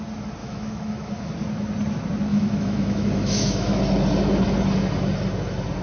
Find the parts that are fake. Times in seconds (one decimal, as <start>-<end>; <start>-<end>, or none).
0.4-1.3; 2.3-3.8